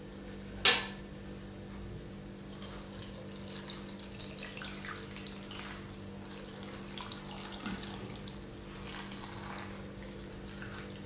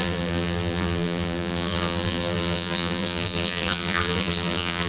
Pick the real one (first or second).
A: first